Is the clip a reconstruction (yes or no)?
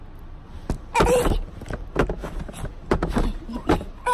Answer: no